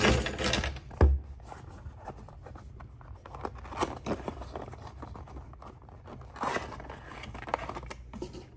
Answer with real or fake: real